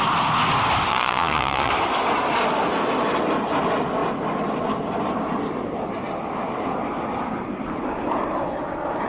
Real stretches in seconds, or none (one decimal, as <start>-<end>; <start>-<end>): 0.0-0.9; 1.7-9.1